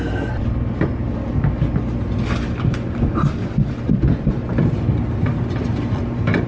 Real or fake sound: real